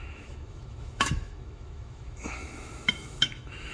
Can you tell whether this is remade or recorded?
remade